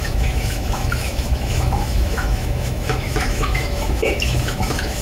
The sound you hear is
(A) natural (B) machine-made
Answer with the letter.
B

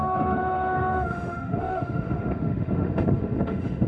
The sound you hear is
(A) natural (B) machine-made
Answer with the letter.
B